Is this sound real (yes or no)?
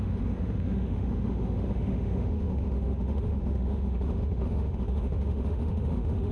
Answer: no